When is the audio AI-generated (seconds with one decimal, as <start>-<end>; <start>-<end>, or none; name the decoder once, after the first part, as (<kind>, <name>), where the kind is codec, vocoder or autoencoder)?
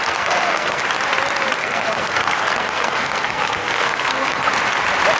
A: 0.0-0.8 (codec, SNAC); 1.6-4.5